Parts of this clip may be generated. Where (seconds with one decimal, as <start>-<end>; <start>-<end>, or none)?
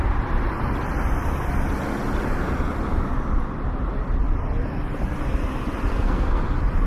5.9-6.4